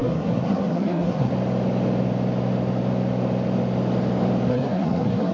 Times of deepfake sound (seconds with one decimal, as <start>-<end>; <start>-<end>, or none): 0.0-1.3; 4.5-5.3